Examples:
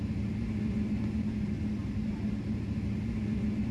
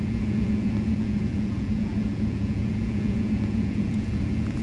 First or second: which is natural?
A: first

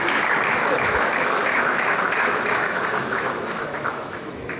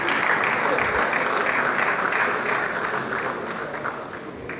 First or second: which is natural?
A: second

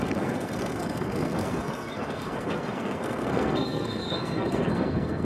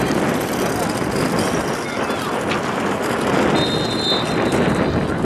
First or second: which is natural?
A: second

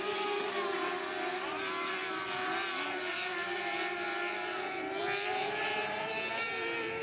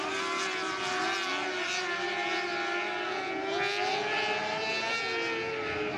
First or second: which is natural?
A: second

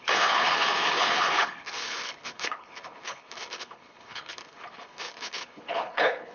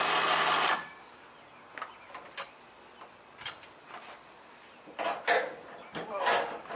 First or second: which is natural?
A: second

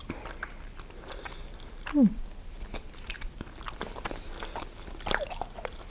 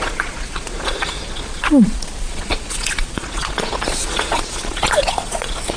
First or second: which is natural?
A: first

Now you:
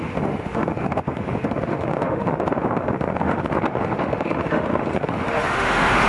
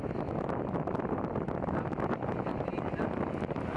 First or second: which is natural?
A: second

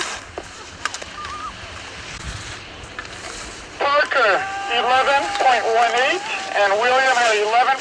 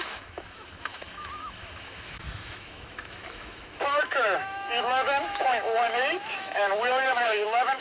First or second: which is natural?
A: first